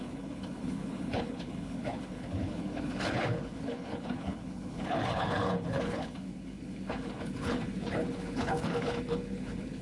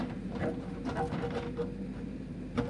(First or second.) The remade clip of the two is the first